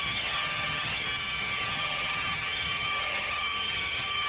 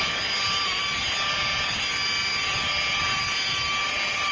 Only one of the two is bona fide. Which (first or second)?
second